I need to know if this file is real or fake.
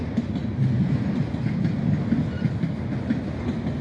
real